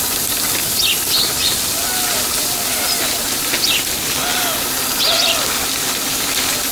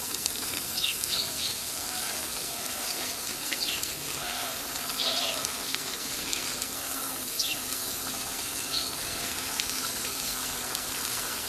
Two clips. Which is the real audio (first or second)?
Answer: first